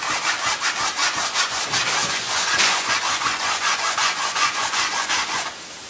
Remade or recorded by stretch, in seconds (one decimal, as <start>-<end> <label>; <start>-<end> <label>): 0.0-1.0 recorded; 1.0-1.6 remade; 1.6-2.0 recorded; 2.0-5.5 remade; 5.5-5.9 recorded